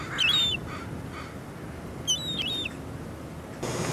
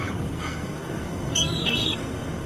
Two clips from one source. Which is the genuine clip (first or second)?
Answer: first